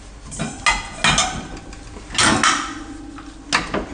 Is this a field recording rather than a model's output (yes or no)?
yes